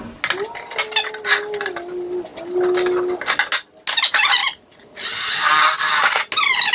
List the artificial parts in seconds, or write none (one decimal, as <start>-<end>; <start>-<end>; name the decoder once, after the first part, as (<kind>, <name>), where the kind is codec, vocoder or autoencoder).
4.4-5.5 (vocoder, Vocos)